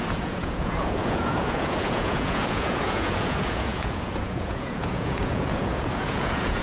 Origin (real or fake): fake